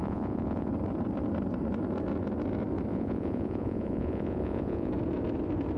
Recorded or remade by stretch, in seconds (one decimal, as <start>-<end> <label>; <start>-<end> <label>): 0.0-0.7 remade; 0.7-2.9 recorded; 2.9-4.9 remade; 4.9-5.8 recorded

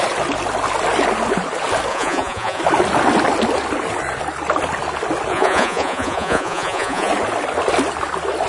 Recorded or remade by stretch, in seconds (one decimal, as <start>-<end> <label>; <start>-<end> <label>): 0.0-1.9 recorded; 1.9-2.6 remade; 2.6-5.3 recorded; 5.3-7.1 remade; 7.1-8.5 recorded

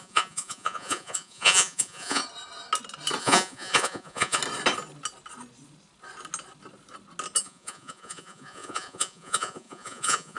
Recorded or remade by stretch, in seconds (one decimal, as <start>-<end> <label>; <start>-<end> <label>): 0.0-2.2 remade; 2.2-3.2 recorded; 3.2-4.4 remade; 4.4-7.4 recorded; 7.4-10.4 remade

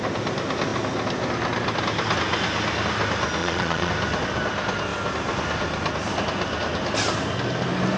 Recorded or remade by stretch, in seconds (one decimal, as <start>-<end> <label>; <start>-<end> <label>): 0.0-3.4 recorded; 3.4-3.9 remade; 3.9-8.0 recorded

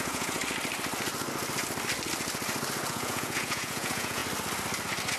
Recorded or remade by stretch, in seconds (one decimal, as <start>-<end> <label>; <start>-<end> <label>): 0.0-0.4 remade; 0.4-2.9 recorded; 2.9-4.2 remade; 4.2-5.2 recorded

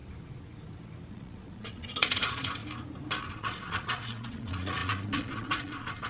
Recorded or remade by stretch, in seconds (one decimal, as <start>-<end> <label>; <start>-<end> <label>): 0.0-1.1 recorded; 1.1-2.6 remade; 2.6-3.3 recorded; 3.3-6.1 remade

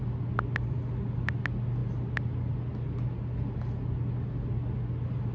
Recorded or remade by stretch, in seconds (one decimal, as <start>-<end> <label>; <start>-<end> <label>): 0.0-5.3 recorded